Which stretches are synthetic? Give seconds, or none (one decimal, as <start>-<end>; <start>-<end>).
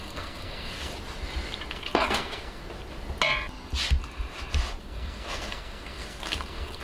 0.0-0.9; 1.7-2.6; 4.8-6.8